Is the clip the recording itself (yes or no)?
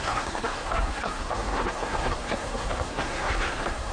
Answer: no